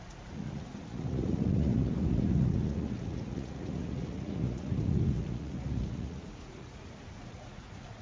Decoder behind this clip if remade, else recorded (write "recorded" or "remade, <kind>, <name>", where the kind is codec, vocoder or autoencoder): remade, vocoder, Vocos